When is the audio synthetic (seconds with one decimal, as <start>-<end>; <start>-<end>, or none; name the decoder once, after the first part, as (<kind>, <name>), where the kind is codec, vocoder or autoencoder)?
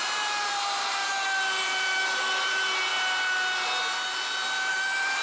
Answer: 0.0-1.1 (vocoder, BigVGAN v2); 1.6-2.9; 4.7-5.2